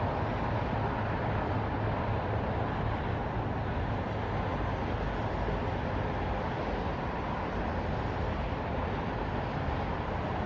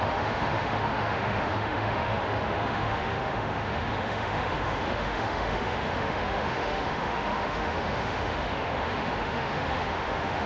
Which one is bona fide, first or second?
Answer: first